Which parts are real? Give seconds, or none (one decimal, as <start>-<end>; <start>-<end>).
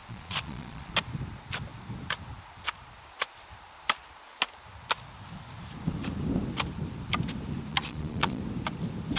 0.9-7.7; 8.4-9.2